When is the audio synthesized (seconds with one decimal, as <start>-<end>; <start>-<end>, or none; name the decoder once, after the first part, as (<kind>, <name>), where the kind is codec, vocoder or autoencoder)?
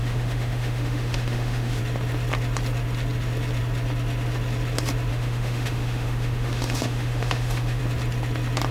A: 0.0-1.8 (autoencoder, DAC-VAE); 5.1-7.8